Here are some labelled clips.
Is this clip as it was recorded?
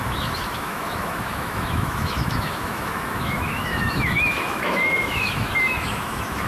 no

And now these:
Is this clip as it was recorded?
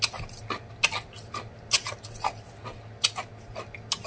yes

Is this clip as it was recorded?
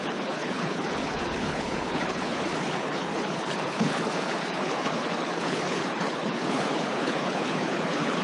no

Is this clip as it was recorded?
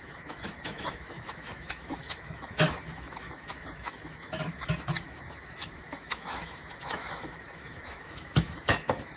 no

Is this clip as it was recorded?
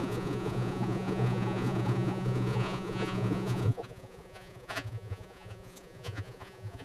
no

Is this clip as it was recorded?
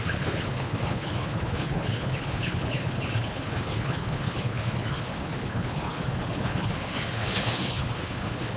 no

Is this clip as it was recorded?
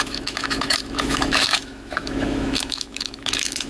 no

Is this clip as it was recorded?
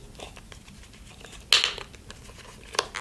yes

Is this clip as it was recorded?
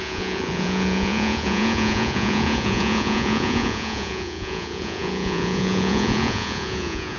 no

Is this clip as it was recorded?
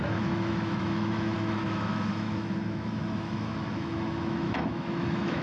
no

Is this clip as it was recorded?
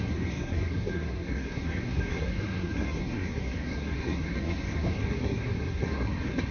no